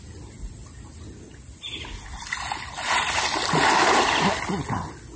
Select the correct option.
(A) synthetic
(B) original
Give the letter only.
B